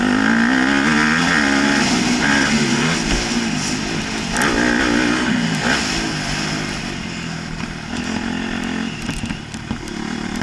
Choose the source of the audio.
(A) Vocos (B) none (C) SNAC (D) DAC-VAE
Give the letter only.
B